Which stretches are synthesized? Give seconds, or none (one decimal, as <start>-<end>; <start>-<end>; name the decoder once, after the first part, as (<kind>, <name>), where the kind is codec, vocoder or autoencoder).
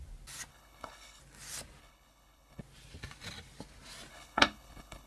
0.5-1.2 (codec, HILCodec); 1.8-2.6; 4.1-5.1